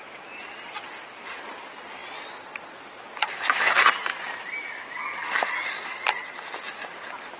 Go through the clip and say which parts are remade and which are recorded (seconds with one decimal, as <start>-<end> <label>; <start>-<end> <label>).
0.0-7.4 recorded

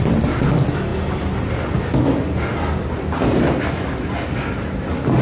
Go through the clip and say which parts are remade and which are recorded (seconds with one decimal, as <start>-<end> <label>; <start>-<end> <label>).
0.0-5.2 recorded

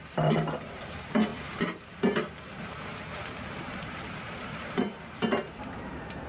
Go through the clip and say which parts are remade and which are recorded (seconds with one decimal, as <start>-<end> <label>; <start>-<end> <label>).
0.0-1.3 remade; 1.3-3.6 recorded; 3.6-6.3 remade

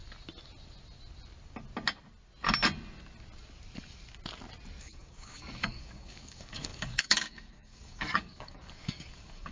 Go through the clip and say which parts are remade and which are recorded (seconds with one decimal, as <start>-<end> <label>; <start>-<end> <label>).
0.0-4.8 recorded; 4.8-9.5 remade

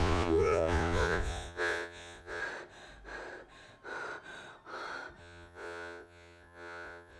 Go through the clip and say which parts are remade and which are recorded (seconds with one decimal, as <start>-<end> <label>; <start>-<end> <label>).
0.0-2.4 remade; 2.4-5.2 recorded; 5.2-7.2 remade